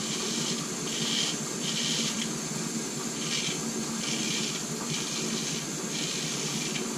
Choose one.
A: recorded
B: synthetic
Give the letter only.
A